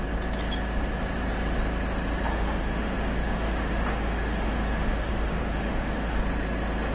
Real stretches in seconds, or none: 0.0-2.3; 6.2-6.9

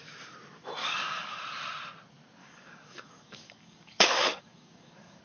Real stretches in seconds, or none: 0.0-0.8; 1.4-2.4